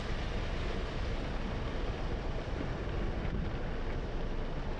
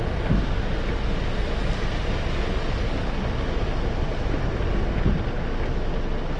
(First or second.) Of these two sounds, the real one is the second